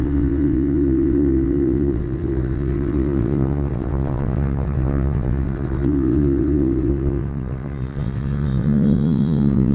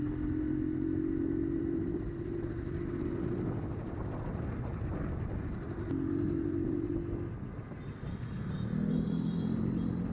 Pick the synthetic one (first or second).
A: first